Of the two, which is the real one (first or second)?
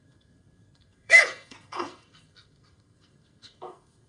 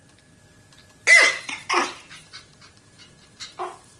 second